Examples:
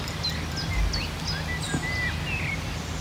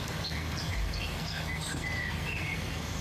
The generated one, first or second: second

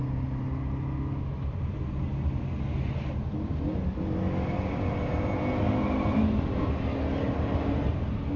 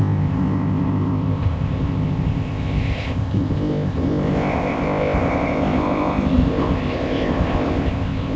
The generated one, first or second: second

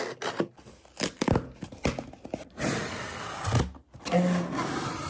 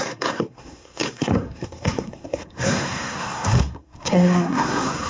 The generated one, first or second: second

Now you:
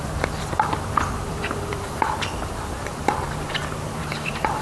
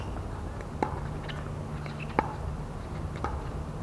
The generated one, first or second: first